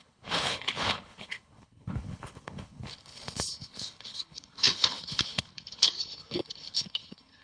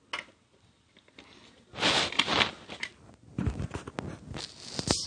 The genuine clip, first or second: second